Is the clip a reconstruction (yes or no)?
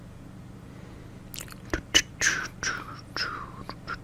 no